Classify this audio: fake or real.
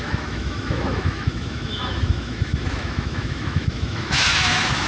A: fake